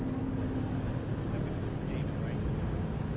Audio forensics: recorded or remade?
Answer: recorded